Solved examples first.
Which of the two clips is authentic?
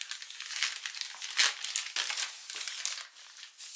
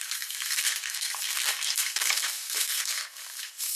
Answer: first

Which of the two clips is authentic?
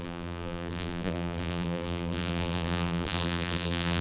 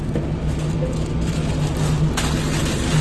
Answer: second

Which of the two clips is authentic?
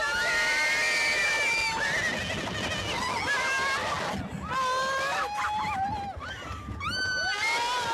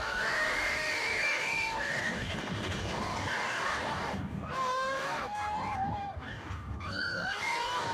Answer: first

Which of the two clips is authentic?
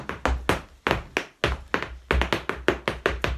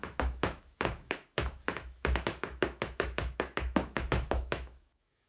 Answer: first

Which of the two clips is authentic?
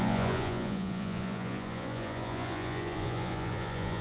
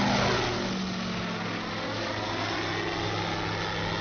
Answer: second